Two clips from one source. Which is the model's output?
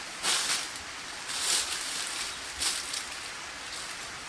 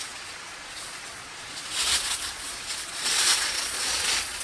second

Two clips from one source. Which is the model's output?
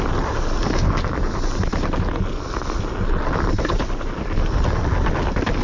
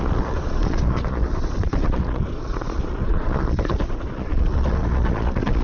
second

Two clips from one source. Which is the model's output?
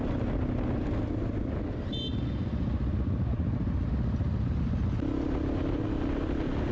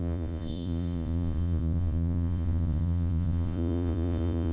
second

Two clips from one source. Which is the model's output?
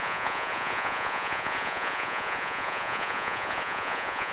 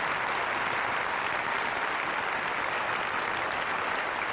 first